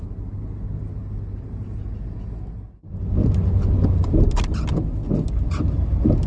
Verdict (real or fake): real